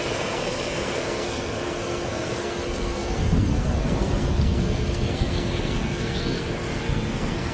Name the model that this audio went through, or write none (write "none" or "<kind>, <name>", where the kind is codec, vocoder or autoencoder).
codec, SNAC